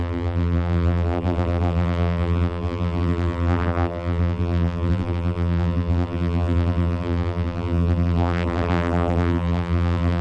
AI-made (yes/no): yes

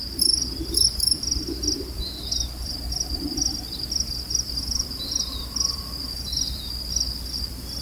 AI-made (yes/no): yes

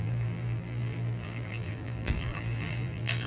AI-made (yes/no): yes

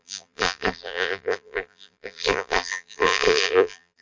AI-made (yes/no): yes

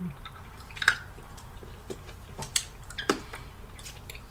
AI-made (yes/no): yes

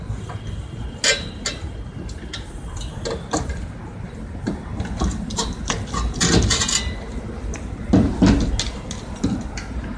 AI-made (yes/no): no